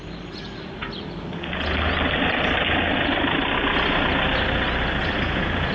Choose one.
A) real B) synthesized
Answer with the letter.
A